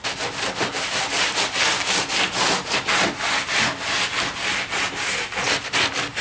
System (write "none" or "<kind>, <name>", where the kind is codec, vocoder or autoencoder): none